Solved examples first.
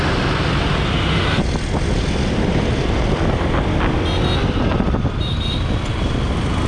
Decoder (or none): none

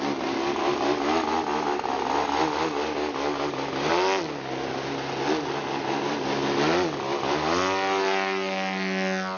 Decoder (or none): none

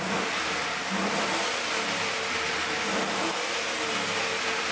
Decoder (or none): none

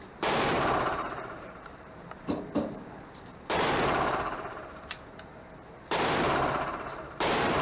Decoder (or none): vocoder, BigVGAN v2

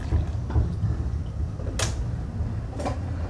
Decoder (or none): none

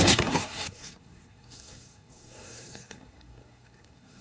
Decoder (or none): codec, SNAC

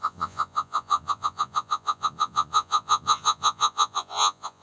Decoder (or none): vocoder, Vocos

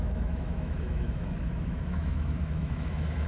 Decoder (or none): autoencoder, DAC-VAE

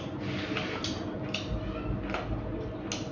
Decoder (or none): none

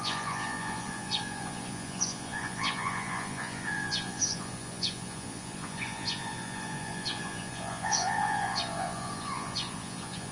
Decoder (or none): vocoder, Vocos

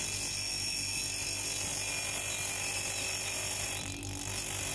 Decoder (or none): none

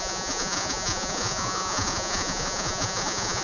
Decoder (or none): vocoder, Vocos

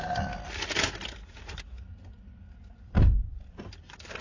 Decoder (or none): none